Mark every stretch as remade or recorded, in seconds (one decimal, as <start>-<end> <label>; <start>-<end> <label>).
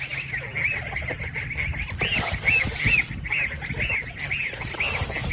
0.0-5.3 recorded